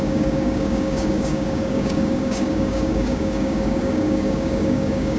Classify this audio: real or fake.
fake